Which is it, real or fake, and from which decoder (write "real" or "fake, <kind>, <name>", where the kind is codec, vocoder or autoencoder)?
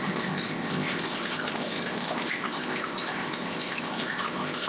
fake, codec, ZipCodec